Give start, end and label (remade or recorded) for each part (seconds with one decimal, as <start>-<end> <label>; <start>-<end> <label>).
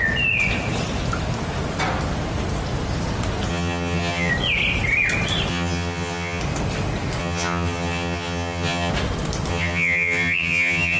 0.0-3.5 recorded; 3.5-4.3 remade; 4.3-5.5 recorded; 5.5-6.4 remade; 6.4-7.2 recorded; 7.2-8.9 remade; 8.9-9.5 recorded; 9.5-11.0 remade